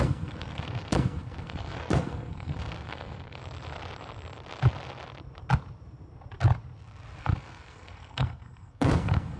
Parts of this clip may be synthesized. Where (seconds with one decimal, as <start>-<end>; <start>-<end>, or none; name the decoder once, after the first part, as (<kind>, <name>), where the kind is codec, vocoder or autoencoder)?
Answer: 0.0-3.4 (codec, SNAC); 7.2-9.4